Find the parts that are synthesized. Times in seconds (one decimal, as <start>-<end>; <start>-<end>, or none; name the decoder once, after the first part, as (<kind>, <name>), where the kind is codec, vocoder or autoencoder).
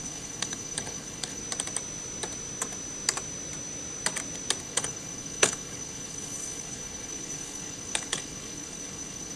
0.0-1.4 (codec, HILCodec); 4.6-9.4